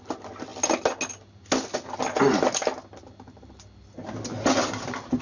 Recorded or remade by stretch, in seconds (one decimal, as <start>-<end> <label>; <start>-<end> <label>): 0.0-5.2 recorded